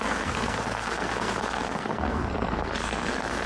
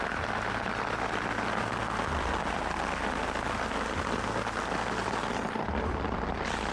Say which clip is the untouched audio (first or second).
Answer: second